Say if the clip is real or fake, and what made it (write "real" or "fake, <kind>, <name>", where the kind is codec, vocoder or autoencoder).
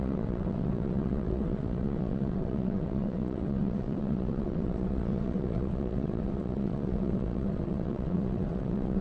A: fake, vocoder, WaveNeXt